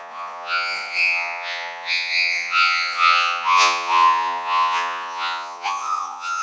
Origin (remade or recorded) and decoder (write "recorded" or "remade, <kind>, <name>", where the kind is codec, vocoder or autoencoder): remade, vocoder, Vocos